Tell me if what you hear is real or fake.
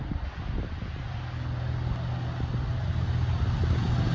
real